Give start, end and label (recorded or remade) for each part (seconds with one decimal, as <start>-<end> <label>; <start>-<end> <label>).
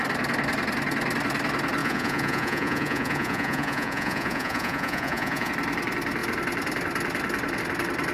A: 0.0-1.8 recorded; 1.8-5.5 remade; 5.5-8.1 recorded